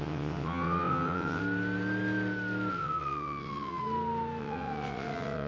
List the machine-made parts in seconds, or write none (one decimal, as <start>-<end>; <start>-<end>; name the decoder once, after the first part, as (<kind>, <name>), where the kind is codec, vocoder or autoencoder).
0.0-1.4 (vocoder, WaveNeXt); 2.7-3.8; 4.4-5.5

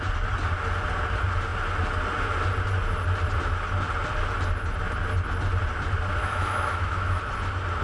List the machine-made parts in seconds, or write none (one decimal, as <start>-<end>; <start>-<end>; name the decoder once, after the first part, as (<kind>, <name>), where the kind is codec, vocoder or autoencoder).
6.2-7.2 (autoencoder, DAC-VAE)

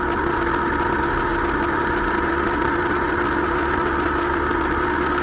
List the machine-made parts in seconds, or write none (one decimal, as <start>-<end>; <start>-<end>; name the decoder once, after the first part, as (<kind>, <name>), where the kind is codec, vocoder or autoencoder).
none

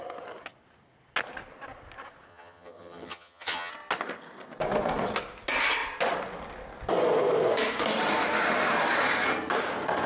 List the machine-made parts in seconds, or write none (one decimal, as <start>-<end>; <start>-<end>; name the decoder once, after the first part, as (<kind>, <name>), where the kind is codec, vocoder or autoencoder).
2.3-3.7 (vocoder, HiFi-GAN)